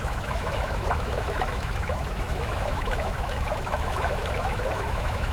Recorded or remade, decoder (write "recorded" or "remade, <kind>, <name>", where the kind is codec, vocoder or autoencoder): remade, autoencoder, DAC-VAE